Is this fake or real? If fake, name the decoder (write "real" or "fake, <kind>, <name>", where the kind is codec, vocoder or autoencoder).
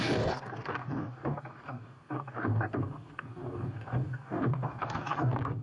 fake, codec, DAC